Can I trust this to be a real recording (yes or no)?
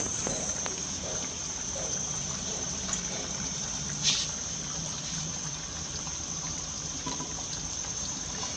no